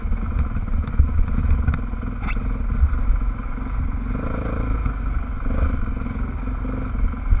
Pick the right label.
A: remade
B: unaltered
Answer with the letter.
B